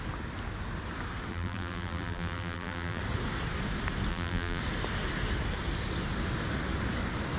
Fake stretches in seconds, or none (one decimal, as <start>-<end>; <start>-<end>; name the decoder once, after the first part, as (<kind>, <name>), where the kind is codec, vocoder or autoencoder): 1.3-3.0 (vocoder, BigVGAN v2); 4.1-4.6